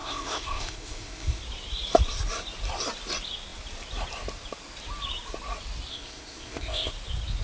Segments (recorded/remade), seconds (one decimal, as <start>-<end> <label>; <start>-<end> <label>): 0.0-1.4 remade; 1.4-5.9 recorded; 5.9-6.9 remade; 6.9-7.4 recorded